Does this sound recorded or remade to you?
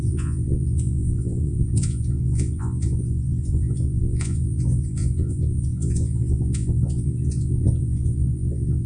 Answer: remade